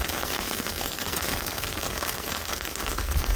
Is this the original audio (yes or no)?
no